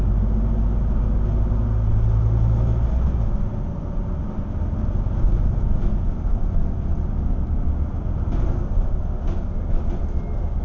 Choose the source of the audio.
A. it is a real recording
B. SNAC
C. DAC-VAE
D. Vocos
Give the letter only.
A